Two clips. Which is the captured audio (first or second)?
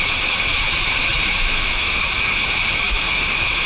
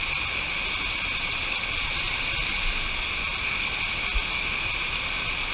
second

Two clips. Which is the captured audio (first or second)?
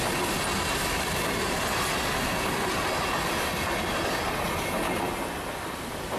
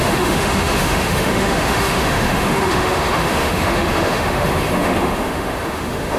first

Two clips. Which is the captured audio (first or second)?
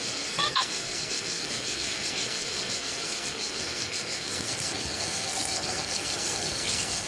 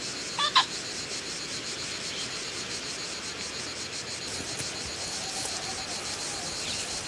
second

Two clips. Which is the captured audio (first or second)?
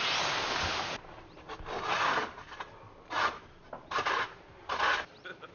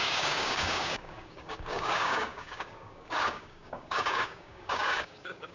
first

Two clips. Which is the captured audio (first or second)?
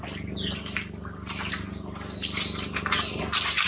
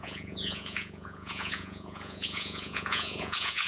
first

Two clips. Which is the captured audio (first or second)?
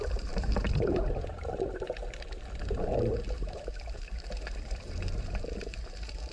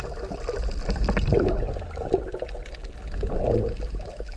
second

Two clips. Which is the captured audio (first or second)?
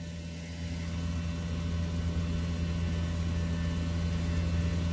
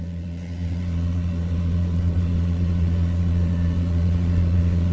first